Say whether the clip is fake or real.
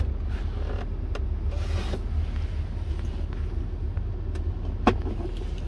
real